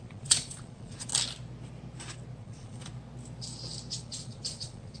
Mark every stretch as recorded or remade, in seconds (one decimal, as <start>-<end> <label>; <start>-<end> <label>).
0.0-1.1 remade; 1.1-2.4 recorded; 2.4-2.9 remade; 2.9-4.0 recorded; 4.0-5.0 remade